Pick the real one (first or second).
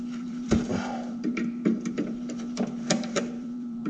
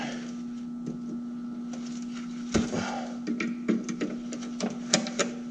second